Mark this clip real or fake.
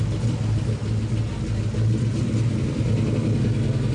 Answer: real